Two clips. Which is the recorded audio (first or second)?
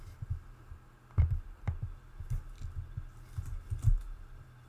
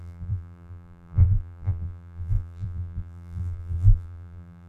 first